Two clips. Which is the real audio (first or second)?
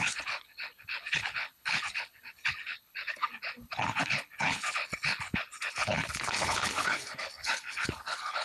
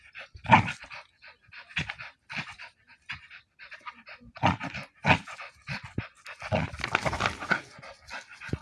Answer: second